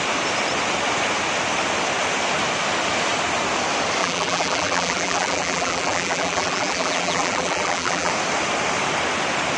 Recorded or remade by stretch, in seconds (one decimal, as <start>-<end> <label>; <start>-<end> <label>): 0.0-4.0 recorded; 4.0-8.1 remade; 8.1-9.6 recorded